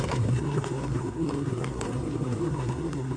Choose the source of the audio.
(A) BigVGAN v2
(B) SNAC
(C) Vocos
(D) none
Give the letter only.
B